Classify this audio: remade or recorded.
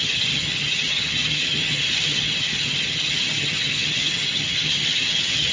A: remade